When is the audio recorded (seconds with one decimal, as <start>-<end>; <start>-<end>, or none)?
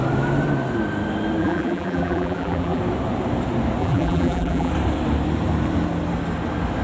0.0-1.4; 2.8-3.8; 4.7-6.8